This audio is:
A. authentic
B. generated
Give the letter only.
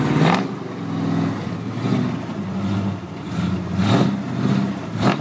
A